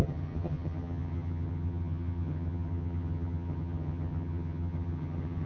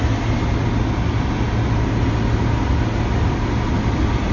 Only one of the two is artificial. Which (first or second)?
first